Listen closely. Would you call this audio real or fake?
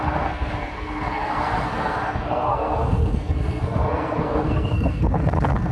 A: fake